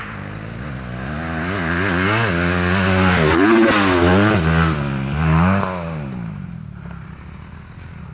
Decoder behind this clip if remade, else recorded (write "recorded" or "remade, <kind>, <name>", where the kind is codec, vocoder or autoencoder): recorded